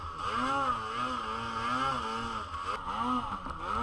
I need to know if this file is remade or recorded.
recorded